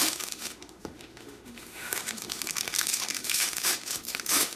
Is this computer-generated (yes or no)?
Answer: yes